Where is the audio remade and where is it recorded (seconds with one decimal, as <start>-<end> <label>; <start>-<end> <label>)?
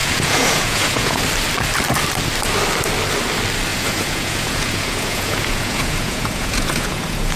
0.0-1.2 remade; 1.2-3.7 recorded; 3.7-7.4 remade